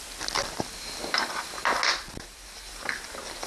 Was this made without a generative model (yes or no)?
yes